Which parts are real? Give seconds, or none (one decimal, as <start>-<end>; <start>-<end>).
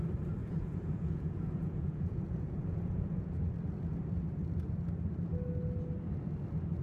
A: 0.0-0.4; 3.4-6.8